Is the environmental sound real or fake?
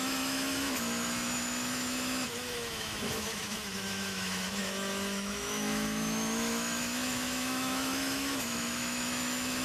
fake